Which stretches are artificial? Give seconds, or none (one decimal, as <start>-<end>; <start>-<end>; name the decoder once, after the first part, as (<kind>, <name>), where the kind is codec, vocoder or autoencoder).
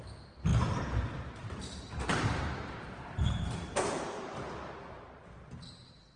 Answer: 0.5-4.2 (vocoder, BigVGAN v2)